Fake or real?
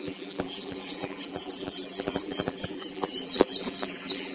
fake